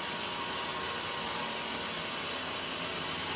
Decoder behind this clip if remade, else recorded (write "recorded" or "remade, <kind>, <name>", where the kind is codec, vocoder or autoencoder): recorded